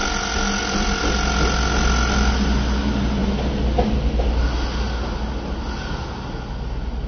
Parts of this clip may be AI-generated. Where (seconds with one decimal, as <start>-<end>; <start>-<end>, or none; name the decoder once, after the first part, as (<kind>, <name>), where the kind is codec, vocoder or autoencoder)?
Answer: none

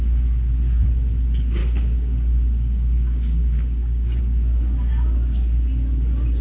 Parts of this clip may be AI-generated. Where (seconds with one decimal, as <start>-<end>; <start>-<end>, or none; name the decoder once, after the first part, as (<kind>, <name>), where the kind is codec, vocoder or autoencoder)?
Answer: 1.6-4.2 (codec, DAC)

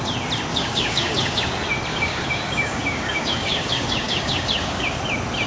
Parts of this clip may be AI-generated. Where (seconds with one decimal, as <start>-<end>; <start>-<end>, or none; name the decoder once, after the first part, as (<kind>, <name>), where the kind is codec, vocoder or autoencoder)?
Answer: 0.5-1.4 (codec, DAC); 1.9-5.0

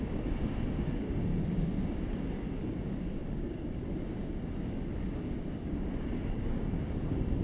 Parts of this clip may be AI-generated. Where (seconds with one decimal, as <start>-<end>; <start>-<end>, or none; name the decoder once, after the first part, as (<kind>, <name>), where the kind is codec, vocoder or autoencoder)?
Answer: 0.0-1.3 (codec, DAC); 2.0-7.4

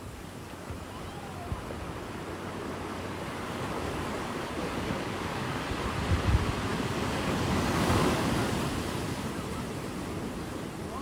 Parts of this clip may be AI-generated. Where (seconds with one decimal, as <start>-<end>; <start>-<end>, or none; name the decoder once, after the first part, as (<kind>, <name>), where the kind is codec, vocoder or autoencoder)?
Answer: 2.9-5.6 (codec, DAC); 6.7-8.2

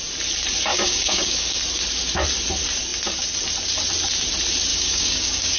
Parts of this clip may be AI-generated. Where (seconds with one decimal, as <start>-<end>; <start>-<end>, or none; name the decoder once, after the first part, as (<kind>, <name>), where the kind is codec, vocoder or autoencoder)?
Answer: 0.7-1.6 (codec, DAC); 4.7-5.6

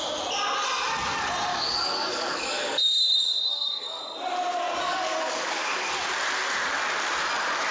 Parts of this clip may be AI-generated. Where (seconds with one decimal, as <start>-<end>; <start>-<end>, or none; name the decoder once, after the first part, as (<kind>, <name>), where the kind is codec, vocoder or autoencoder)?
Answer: 1.5-4.0 (codec, DAC); 4.9-5.9

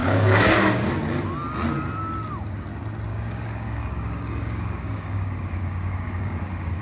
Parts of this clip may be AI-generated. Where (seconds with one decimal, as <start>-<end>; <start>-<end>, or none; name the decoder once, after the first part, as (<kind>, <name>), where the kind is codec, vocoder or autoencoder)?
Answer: 0.0-0.9 (codec, DAC); 3.1-6.8